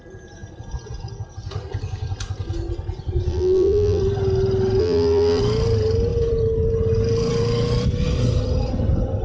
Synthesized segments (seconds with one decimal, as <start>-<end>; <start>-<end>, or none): 3.3-4.0; 4.8-5.4